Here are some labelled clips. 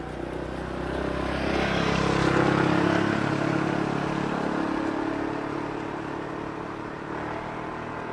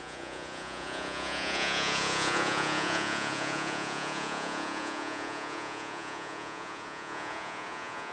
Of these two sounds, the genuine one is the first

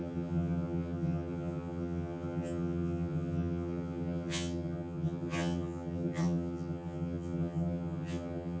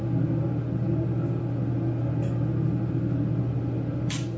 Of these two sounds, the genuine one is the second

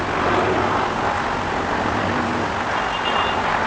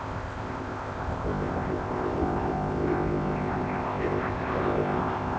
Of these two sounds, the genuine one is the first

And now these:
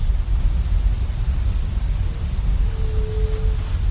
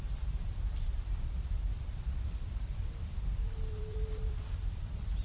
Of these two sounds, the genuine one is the first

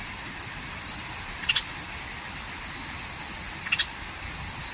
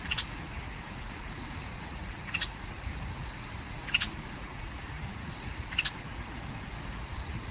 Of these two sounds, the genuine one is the first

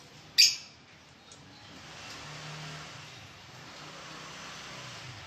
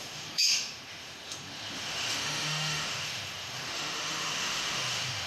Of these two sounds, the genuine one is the first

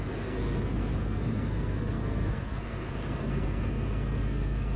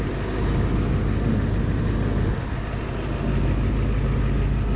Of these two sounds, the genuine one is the second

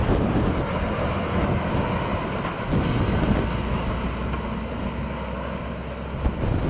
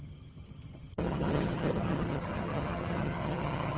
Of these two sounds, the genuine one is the first